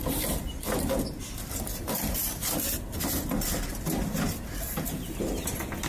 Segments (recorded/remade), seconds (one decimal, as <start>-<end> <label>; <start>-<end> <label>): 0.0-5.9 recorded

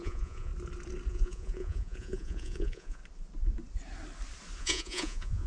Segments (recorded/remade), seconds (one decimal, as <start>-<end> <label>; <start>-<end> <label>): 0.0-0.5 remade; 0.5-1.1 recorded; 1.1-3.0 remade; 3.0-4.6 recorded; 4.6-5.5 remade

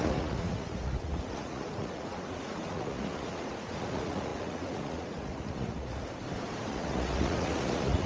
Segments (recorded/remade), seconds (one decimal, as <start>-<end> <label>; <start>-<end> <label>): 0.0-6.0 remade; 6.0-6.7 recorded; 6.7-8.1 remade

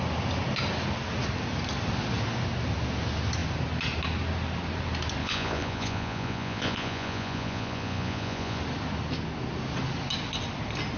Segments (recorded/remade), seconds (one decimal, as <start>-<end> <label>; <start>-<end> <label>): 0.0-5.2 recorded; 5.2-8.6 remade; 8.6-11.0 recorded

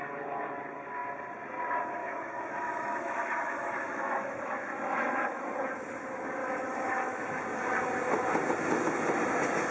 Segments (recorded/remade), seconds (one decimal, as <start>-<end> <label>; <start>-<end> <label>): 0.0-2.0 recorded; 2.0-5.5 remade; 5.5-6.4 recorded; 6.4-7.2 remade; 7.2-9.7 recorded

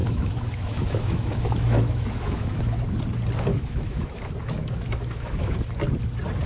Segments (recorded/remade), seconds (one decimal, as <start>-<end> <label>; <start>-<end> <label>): 0.0-2.8 remade; 2.8-3.5 recorded; 3.5-5.7 remade; 5.7-6.5 recorded

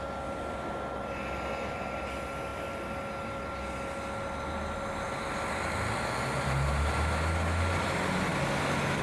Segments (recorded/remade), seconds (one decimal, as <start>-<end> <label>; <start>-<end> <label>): 0.0-9.0 recorded

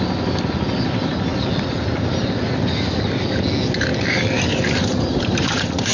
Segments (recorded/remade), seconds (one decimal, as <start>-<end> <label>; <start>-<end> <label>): 0.0-5.9 recorded